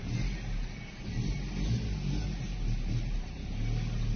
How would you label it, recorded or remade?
recorded